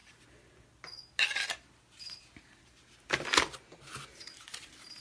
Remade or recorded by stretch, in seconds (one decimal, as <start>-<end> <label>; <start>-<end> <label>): 0.0-5.0 recorded